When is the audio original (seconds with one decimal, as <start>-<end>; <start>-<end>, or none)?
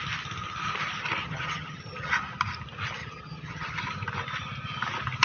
0.0-1.2; 2.1-3.0; 3.8-5.2